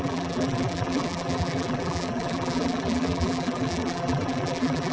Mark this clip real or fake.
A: fake